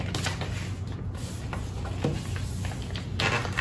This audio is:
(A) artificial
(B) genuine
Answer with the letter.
B